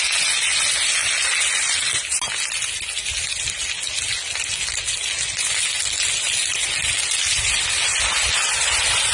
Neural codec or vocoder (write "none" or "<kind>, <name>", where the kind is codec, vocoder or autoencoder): none